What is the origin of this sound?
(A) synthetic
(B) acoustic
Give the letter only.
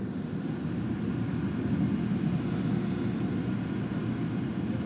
B